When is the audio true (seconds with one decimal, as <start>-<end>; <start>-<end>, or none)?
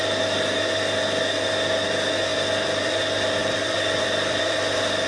0.0-2.3; 2.9-3.4; 4.4-5.1